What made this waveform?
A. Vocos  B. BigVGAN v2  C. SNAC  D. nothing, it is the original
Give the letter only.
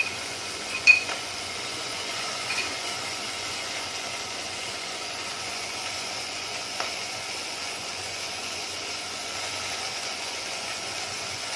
A